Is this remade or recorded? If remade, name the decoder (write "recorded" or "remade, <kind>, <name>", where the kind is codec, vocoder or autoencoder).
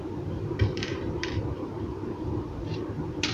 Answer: remade, vocoder, BigVGAN v2